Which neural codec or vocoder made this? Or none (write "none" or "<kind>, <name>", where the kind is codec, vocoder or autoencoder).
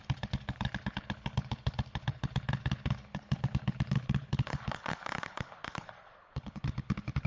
codec, HILCodec